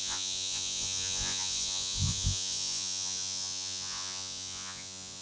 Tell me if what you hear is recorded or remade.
remade